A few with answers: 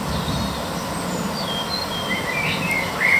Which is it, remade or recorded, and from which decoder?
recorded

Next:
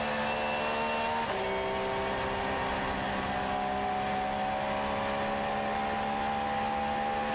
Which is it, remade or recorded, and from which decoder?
recorded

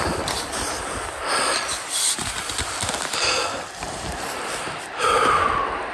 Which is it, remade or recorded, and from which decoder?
recorded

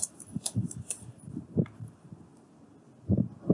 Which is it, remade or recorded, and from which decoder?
recorded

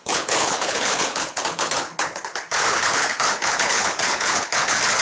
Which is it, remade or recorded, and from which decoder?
remade, codec, HILCodec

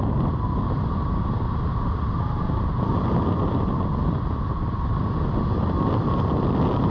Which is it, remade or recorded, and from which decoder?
recorded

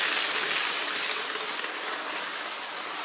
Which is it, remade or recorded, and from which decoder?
recorded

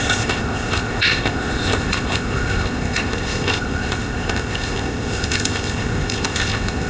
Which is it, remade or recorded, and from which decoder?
remade, codec, ZipCodec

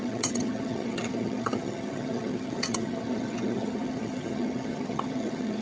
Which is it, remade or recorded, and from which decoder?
remade, vocoder, HiFi-GAN